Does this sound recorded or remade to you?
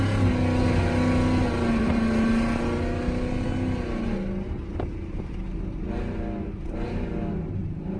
recorded